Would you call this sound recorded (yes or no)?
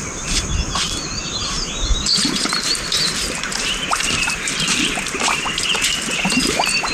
no